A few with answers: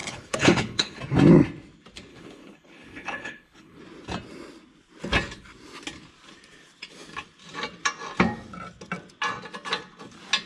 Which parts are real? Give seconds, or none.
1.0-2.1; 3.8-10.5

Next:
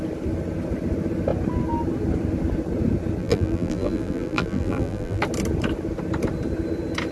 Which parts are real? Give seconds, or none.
0.0-3.2; 5.2-7.1

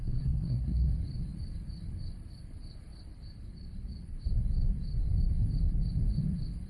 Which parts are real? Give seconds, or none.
0.9-6.7

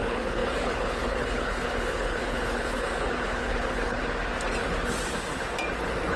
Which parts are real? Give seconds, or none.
4.0-6.2

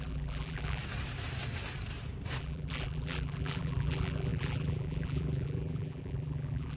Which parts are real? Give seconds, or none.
0.8-2.4

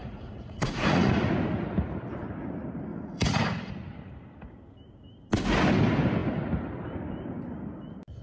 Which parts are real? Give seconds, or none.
1.3-2.9; 3.7-8.2

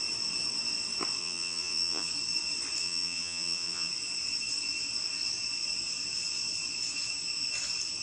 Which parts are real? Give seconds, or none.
0.0-1.2; 2.1-2.8; 3.9-8.0